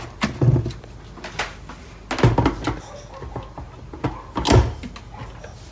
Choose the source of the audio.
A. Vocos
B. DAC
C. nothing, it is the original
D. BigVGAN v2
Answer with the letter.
C